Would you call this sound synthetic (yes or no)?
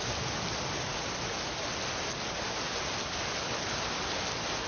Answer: no